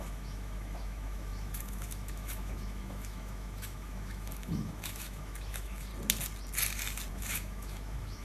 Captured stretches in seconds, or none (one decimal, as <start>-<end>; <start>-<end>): 5.9-7.1